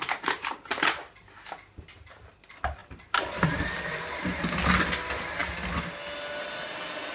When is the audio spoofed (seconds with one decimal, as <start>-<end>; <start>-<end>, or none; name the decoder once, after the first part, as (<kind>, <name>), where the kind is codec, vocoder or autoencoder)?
2.8-4.1 (vocoder, BigVGAN v2)